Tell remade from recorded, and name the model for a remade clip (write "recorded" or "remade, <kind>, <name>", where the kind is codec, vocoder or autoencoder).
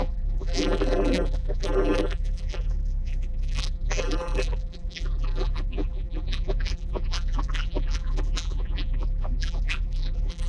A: remade, vocoder, BigVGAN v2